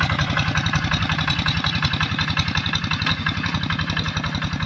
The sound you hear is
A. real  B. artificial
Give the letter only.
A